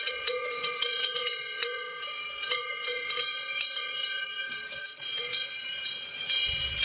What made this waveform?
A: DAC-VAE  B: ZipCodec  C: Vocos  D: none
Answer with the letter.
C